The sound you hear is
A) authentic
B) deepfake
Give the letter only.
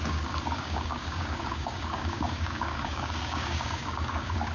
B